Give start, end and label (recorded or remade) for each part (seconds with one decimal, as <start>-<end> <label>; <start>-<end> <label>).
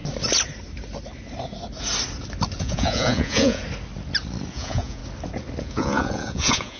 0.0-2.6 recorded; 2.6-3.6 remade; 3.6-4.5 recorded; 4.5-5.0 remade; 5.0-5.6 recorded; 5.6-6.8 remade